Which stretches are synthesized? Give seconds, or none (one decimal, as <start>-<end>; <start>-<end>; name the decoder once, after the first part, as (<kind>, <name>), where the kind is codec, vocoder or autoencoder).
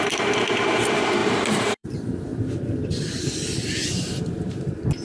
0.0-2.3 (vocoder, BigVGAN v2); 4.0-5.0